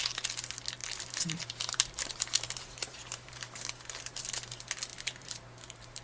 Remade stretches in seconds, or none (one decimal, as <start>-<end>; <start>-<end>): 0.8-4.2; 4.9-6.0